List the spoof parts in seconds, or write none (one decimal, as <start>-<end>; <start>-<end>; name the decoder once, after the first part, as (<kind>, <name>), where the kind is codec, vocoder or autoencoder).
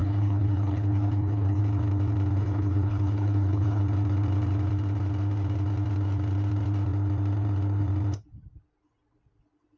0.0-1.6 (codec, HILCodec); 2.4-3.8